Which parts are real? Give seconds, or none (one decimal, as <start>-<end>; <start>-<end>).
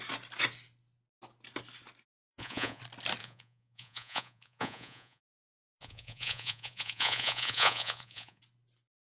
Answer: 0.0-2.3; 2.8-3.2; 8.4-9.1